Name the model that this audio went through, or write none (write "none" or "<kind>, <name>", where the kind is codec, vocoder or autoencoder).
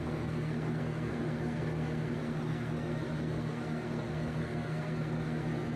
codec, SNAC